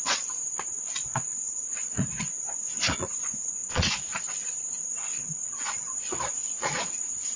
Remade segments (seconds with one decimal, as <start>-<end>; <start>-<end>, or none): 0.0-7.4